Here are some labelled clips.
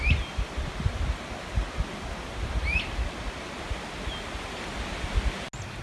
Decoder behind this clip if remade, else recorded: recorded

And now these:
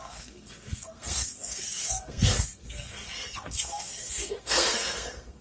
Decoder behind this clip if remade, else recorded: remade, codec, SNAC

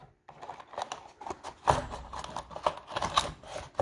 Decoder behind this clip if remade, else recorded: recorded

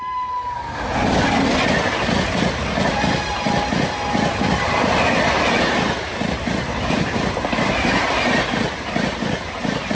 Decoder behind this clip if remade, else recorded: remade, vocoder, BigVGAN v2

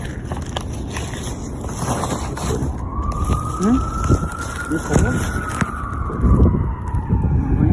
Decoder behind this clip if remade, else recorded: recorded